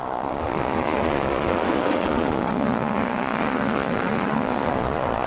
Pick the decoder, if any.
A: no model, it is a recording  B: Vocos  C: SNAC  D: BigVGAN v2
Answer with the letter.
B